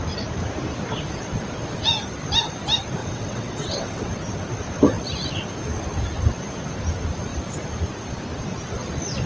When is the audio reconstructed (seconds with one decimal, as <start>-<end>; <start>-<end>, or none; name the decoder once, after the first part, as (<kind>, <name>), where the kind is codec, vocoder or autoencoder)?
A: 3.0-4.1 (vocoder, WaveNeXt)